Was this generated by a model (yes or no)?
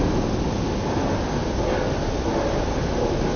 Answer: no